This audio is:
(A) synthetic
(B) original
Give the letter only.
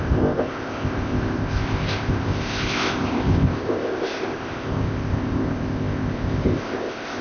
A